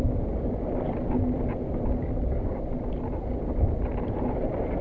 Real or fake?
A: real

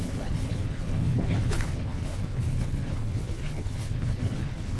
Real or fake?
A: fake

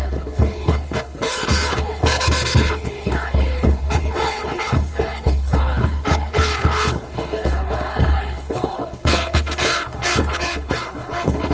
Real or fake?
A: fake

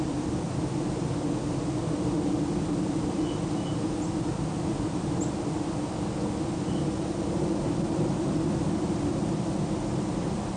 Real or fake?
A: real